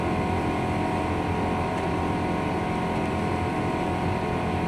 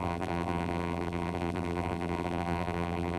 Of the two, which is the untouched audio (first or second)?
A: first